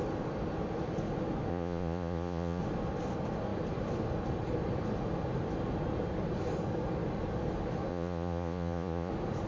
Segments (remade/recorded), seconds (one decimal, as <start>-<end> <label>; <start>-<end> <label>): 0.0-1.5 recorded; 1.5-2.6 remade; 2.6-7.9 recorded; 7.9-9.1 remade; 9.1-9.5 recorded